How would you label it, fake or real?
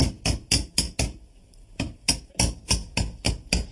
real